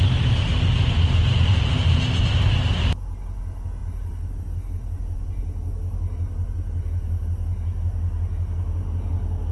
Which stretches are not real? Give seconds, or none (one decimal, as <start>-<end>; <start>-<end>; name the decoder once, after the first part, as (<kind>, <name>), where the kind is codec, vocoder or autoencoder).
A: none